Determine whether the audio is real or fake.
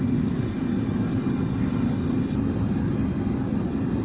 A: real